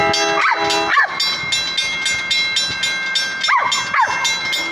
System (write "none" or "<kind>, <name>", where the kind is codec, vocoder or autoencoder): none